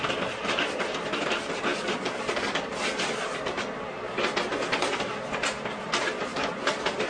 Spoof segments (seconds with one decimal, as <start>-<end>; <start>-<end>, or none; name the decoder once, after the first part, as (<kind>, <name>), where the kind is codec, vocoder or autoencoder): none